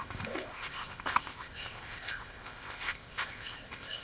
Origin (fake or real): fake